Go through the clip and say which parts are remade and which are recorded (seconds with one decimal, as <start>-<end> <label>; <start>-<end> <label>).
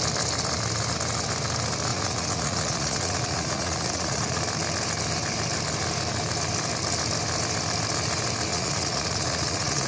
0.0-1.9 recorded; 1.9-4.4 remade; 4.4-8.5 recorded; 8.5-9.9 remade